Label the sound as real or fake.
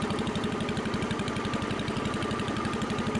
fake